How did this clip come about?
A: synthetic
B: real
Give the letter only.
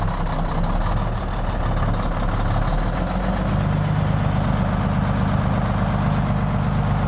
B